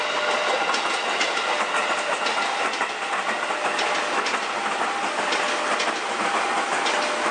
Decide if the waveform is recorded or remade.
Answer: recorded